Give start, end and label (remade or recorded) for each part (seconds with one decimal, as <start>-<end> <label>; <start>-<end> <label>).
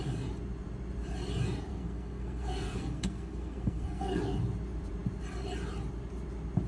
0.0-1.7 recorded; 1.7-4.2 remade; 4.2-6.7 recorded